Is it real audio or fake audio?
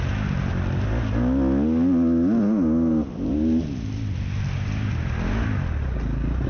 real